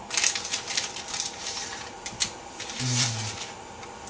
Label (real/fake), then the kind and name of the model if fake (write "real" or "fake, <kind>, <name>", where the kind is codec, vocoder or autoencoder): fake, vocoder, BigVGAN v2